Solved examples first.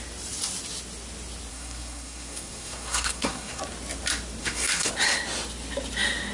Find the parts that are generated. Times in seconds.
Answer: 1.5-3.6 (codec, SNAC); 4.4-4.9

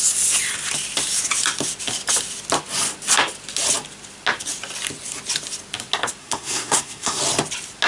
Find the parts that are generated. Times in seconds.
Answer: 6.2-7.2 (codec, SNAC)

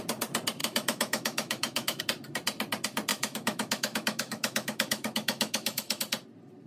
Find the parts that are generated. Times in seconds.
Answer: 0.6-2.0 (autoencoder, DAC-VAE); 3.1-6.0

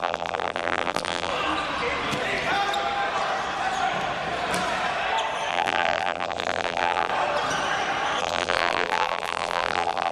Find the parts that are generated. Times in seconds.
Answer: 0.0-1.3 (vocoder, BigVGAN v2); 5.5-7.1; 8.2-10.1

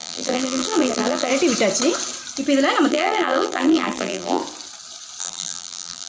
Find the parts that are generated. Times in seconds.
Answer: 0.0-1.3 (vocoder, BigVGAN v2); 2.9-4.4; 5.2-6.1

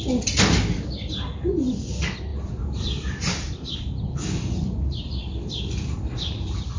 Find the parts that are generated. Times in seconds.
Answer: 2.3-6.8 (vocoder, BigVGAN v2)

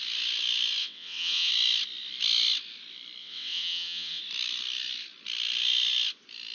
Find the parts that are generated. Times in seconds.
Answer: 0.8-1.5 (vocoder, WaveNeXt); 3.2-4.2